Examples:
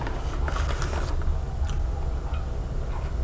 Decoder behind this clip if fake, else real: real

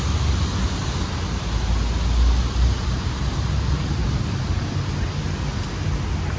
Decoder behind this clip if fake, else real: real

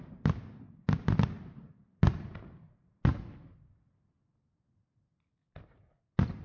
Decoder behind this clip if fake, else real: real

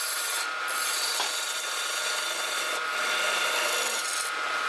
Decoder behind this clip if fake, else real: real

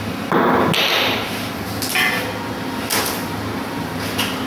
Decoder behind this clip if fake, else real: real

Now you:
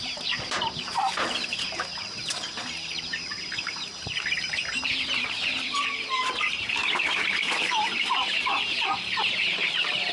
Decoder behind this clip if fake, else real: fake, vocoder, BigVGAN v2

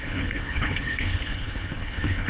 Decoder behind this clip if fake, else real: fake, codec, HILCodec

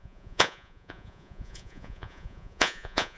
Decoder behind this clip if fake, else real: fake, vocoder, Vocos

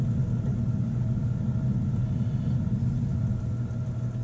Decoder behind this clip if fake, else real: real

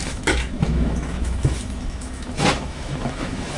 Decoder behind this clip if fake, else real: fake, autoencoder, DAC-VAE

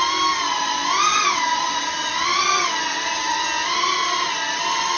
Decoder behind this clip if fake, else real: real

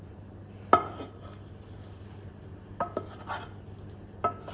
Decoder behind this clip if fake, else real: real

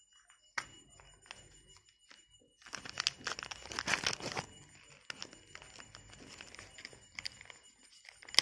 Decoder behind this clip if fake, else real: real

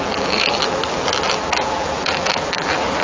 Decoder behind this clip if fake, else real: fake, vocoder, BigVGAN v2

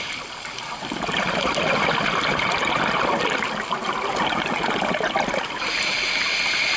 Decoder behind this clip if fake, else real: real